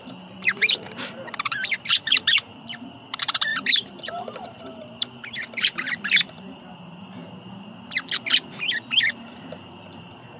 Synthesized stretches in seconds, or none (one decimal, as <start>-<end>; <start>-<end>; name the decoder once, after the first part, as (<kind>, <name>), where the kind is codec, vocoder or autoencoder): 0.0-7.2 (vocoder, BigVGAN v2); 8.5-10.4